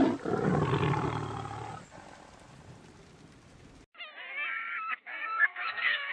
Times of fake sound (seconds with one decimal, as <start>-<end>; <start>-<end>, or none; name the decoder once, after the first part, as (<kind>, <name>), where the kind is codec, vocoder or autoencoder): 4.9-6.1 (codec, SNAC)